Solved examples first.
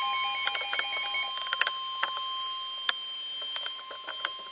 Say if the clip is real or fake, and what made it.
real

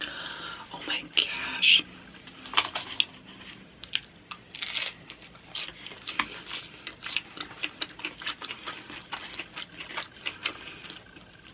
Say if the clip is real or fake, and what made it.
real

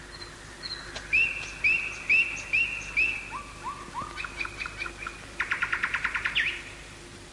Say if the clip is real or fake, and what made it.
real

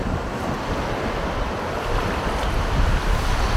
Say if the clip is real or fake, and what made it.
real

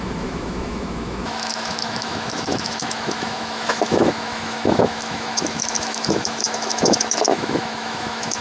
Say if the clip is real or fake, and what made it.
fake, autoencoder, DAC-VAE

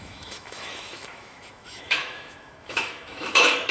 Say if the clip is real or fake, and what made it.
fake, autoencoder, DAC-VAE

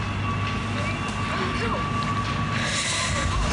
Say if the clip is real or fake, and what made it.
real